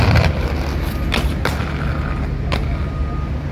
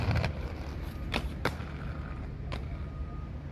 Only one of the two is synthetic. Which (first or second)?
second